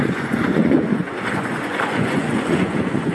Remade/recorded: remade